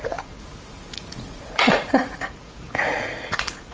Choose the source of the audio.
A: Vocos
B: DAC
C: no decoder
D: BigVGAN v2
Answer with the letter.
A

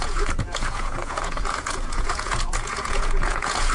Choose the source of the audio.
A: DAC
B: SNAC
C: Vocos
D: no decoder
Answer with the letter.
C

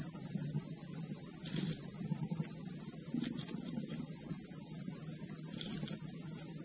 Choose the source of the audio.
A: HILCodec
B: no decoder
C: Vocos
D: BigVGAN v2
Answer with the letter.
B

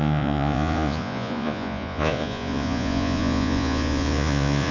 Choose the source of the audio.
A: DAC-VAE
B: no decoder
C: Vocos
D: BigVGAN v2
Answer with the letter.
C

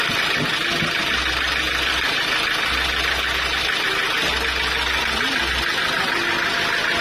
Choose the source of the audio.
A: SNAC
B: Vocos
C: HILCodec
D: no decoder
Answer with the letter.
D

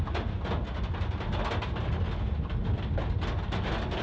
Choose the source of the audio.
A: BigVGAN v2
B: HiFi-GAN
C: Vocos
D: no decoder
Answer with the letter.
D